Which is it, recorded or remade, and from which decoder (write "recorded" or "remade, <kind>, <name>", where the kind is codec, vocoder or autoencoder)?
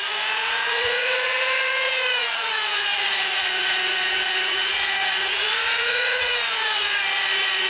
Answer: remade, vocoder, Vocos